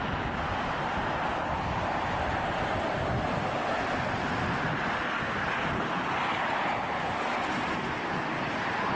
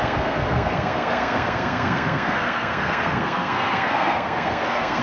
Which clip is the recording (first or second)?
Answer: first